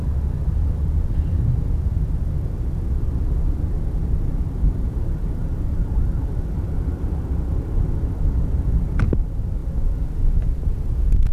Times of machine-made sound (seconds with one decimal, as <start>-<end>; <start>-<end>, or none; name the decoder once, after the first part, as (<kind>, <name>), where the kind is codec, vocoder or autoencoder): 0.0-9.6 (vocoder, BigVGAN v2)